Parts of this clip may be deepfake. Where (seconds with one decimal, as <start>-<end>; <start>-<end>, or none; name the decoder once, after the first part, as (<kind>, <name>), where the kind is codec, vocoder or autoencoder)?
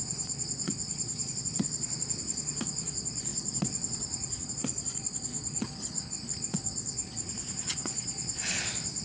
0.0-9.0 (vocoder, Vocos)